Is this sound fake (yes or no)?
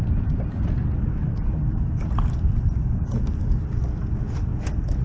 no